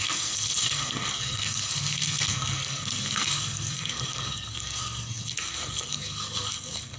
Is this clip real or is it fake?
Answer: fake